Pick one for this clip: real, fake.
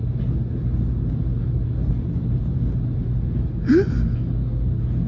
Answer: real